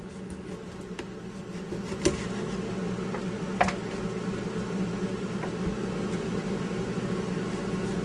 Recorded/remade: recorded